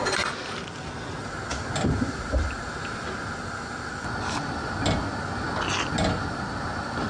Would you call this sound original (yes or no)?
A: yes